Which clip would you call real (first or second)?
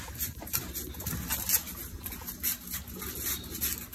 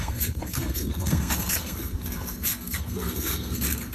first